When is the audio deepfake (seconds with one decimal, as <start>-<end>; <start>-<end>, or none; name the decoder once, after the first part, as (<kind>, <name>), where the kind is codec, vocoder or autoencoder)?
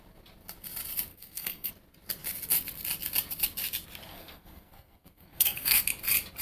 1.1-1.7 (codec, SNAC); 4.1-5.8